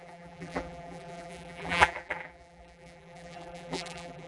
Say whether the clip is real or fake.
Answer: fake